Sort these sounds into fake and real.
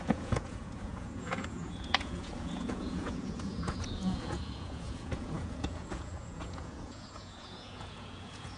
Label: fake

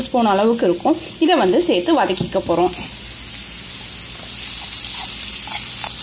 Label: real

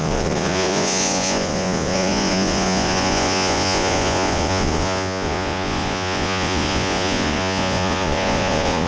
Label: fake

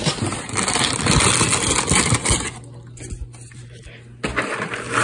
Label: real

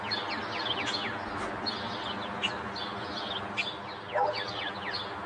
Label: real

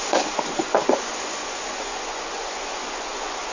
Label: fake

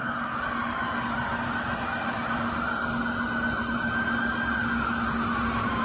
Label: real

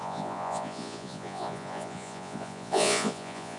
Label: fake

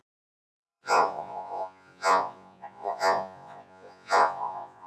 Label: fake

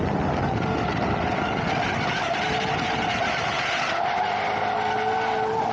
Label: real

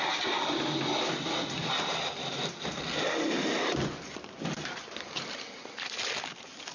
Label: real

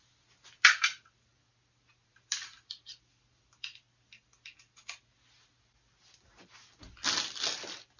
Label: real